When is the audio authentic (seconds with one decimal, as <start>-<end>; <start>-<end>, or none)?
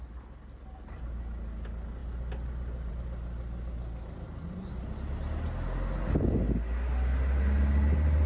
0.0-8.3